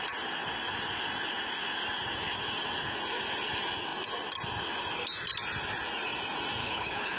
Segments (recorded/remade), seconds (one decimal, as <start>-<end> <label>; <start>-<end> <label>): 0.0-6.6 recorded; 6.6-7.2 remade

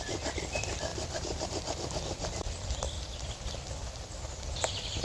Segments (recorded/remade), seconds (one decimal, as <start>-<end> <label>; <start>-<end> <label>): 0.0-5.0 recorded

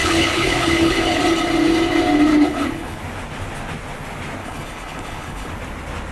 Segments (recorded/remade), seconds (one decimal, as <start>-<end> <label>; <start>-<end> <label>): 0.0-1.2 remade; 1.2-2.3 recorded; 2.3-3.0 remade; 3.0-4.4 recorded; 4.4-5.5 remade; 5.5-6.1 recorded

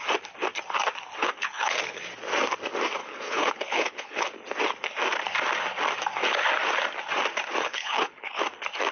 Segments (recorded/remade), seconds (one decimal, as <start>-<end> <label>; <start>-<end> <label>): 0.0-1.2 recorded; 1.2-1.8 remade; 1.8-3.0 recorded; 3.0-4.3 remade; 4.3-7.6 recorded; 7.6-8.4 remade; 8.4-8.9 recorded

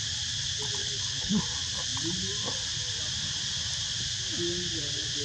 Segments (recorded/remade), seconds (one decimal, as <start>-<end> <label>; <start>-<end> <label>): 0.0-0.8 recorded; 0.8-1.4 remade; 1.4-5.2 recorded

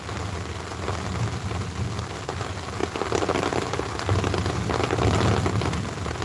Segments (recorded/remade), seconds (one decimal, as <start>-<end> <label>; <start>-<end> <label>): 0.0-6.2 recorded